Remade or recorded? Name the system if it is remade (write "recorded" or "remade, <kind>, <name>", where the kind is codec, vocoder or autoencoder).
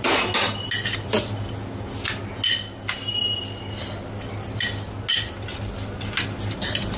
recorded